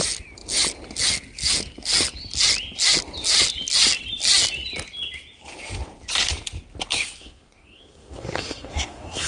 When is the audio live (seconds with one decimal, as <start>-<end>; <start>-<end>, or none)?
0.0-7.2